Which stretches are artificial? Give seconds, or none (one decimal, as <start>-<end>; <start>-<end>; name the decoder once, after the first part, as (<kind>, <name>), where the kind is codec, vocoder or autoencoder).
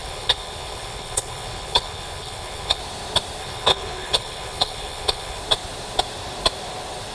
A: 0.0-2.8 (codec, HILCodec); 3.4-5.4